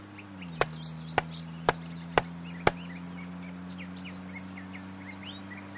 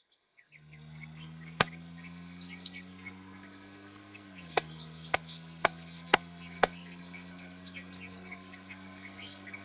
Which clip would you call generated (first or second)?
second